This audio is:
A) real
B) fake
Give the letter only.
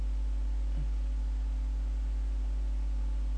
A